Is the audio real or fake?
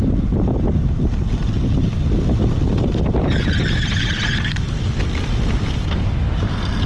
real